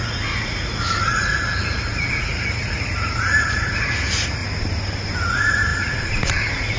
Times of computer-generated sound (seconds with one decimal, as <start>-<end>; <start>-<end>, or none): 0.0-4.4; 5.3-6.8